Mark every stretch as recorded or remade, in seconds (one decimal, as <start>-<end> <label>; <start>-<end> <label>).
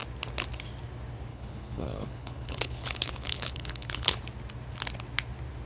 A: 0.0-1.3 recorded; 1.3-4.2 remade; 4.2-5.7 recorded